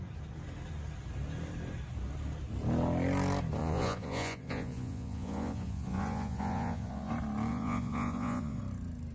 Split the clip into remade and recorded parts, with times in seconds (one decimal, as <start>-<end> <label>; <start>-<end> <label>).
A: 0.0-3.6 recorded; 3.6-7.1 remade; 7.1-7.5 recorded; 7.5-8.6 remade; 8.6-9.1 recorded